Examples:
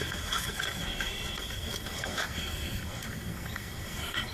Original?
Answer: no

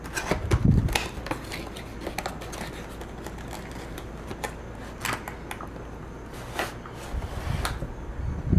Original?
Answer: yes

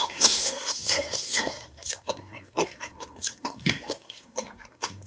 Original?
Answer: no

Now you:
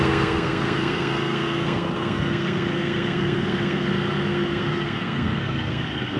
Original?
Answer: no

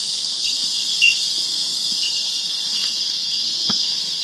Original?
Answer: no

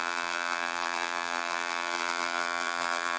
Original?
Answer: no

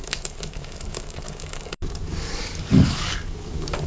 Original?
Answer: no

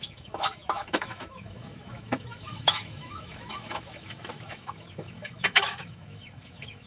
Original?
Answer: no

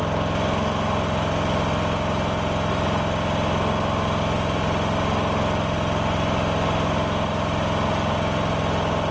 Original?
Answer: yes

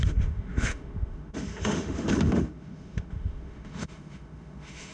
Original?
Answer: no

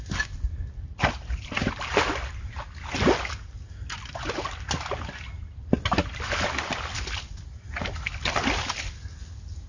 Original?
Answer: yes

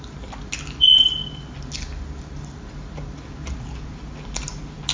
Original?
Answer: yes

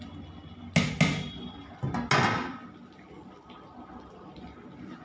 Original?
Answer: yes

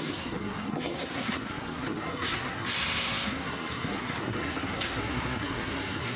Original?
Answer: no